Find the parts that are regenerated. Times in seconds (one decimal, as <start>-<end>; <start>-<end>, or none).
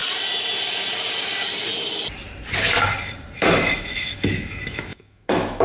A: 3.4-5.6